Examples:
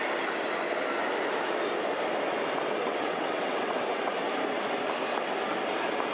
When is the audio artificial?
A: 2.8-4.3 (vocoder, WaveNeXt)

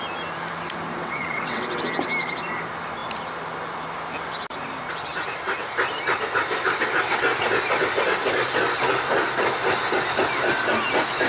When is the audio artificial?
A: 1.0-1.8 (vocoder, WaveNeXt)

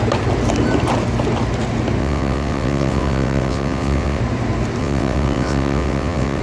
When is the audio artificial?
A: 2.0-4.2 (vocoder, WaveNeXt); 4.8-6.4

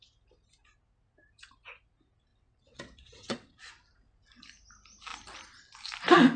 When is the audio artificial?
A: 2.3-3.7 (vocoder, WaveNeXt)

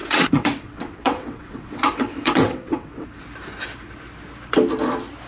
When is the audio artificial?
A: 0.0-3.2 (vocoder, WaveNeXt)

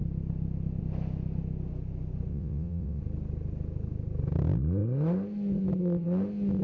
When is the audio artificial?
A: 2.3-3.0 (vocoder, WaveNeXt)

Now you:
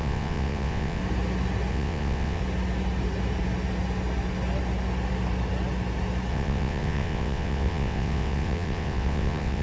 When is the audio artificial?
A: 0.0-1.0 (vocoder, WaveNeXt); 1.7-2.4; 6.3-9.6

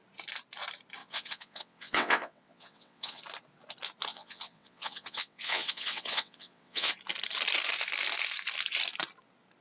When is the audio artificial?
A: 1.0-3.2 (vocoder, WaveNeXt); 4.1-6.9